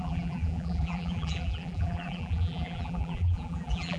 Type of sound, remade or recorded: remade